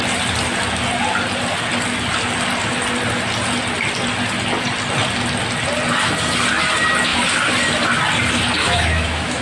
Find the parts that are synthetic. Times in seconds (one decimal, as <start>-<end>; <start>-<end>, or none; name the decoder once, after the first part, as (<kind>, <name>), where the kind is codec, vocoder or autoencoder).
8.6-9.4 (autoencoder, DAC-VAE)